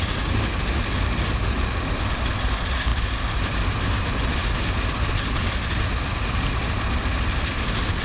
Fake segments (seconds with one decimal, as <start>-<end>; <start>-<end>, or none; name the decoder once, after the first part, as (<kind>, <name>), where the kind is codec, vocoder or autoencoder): none